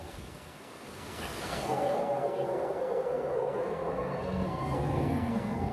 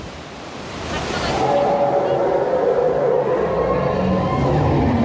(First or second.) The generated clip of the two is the first